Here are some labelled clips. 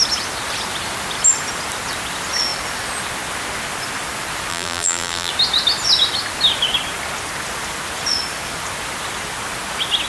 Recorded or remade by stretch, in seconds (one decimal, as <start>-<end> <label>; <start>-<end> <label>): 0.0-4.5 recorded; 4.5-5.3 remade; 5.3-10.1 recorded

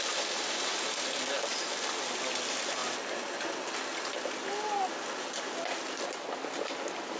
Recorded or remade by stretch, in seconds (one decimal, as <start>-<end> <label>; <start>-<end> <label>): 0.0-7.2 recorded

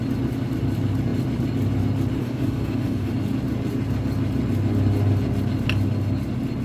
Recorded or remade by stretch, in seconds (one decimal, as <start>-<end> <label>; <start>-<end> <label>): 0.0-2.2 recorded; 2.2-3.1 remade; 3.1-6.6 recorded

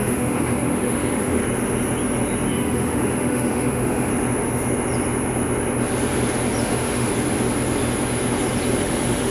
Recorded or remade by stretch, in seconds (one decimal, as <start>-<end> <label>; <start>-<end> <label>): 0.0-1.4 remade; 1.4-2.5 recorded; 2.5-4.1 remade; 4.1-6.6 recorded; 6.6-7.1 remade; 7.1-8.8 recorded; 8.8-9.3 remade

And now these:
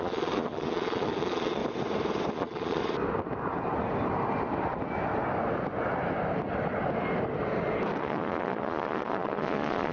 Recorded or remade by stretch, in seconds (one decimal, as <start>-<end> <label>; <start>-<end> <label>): 0.0-1.6 remade; 1.6-2.3 recorded; 2.3-2.8 remade; 2.8-8.0 recorded; 8.0-9.9 remade

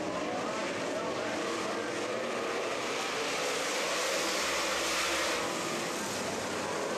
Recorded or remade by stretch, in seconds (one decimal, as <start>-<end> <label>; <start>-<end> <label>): 0.0-7.0 recorded

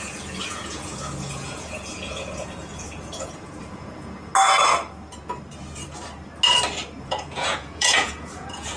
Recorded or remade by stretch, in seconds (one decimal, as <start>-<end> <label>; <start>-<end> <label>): 0.0-4.3 remade; 4.3-7.0 recorded; 7.0-8.8 remade

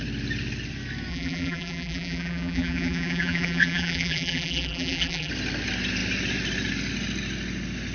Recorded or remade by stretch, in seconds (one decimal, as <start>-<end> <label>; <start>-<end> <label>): 0.0-1.1 recorded; 1.1-5.3 remade; 5.3-7.9 recorded